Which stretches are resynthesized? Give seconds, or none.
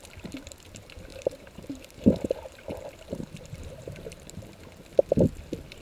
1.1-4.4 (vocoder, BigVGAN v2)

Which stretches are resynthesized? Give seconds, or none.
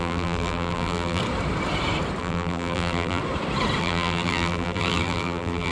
0.0-1.2 (vocoder, BigVGAN v2); 2.2-3.2; 3.8-5.7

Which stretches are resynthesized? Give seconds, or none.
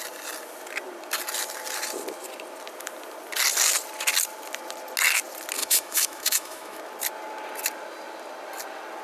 5.6-6.8 (autoencoder, DAC-VAE)